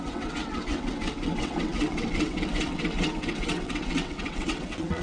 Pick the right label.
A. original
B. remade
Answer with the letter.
B